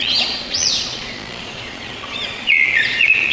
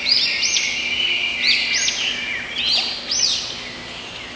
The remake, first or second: first